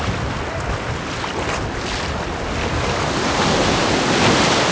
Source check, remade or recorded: recorded